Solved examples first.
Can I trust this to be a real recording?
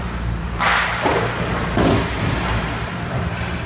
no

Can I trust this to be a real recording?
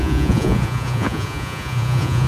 no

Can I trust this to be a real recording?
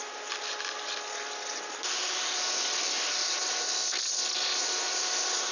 yes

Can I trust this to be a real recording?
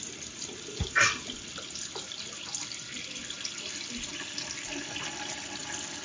yes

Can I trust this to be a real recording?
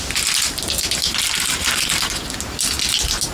yes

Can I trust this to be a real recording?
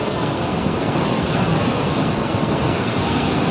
no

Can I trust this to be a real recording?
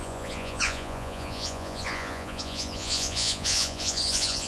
no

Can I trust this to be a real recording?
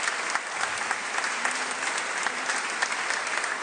yes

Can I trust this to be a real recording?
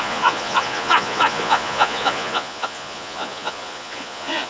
no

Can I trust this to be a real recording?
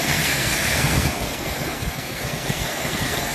no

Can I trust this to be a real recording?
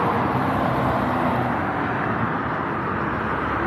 yes